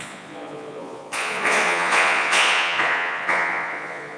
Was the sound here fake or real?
fake